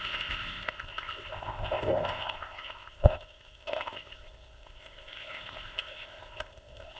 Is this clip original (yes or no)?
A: no